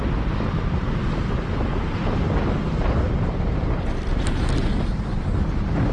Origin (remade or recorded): recorded